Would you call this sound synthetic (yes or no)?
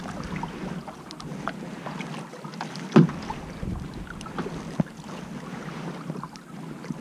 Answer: no